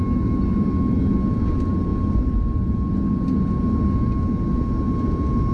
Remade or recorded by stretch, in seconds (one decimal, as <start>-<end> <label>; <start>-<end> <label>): 0.0-5.5 recorded